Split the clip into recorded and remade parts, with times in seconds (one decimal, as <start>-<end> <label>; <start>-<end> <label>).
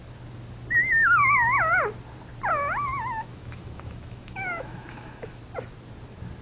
0.0-2.9 recorded; 2.9-5.4 remade; 5.4-6.4 recorded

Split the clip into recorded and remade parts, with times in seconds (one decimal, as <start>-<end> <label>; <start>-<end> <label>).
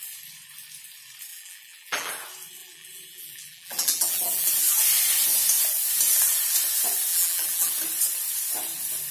0.0-1.3 recorded; 1.3-2.1 remade; 2.1-2.6 recorded; 2.6-4.5 remade; 4.5-7.1 recorded; 7.1-7.7 remade; 7.7-9.1 recorded